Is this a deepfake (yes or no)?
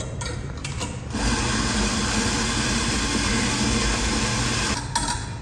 no